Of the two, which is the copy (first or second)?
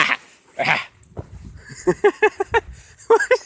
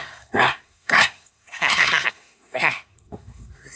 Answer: second